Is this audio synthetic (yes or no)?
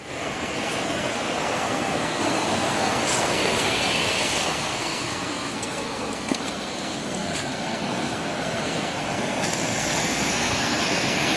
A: yes